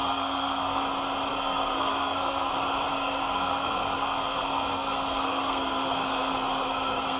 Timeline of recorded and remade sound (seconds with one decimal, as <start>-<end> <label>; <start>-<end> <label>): 0.0-0.8 remade; 0.8-1.3 recorded; 1.3-2.5 remade; 2.5-2.9 recorded; 2.9-7.2 remade